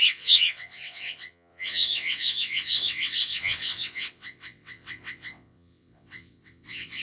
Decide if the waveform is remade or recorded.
remade